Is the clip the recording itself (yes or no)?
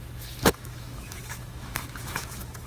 no